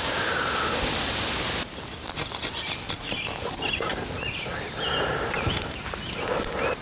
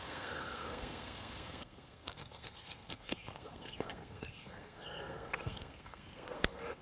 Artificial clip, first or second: second